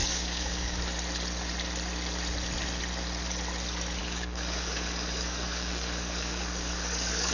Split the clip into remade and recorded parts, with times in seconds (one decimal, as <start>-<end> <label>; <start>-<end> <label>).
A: 0.0-0.8 remade; 0.8-4.0 recorded; 4.0-7.3 remade